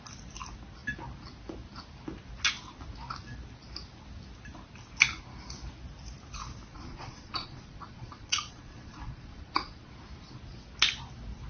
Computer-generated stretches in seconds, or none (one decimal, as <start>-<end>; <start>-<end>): 6.7-9.9